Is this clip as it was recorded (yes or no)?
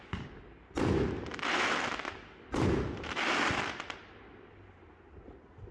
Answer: yes